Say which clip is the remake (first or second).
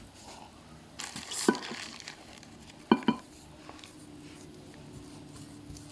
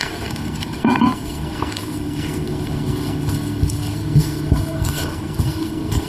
second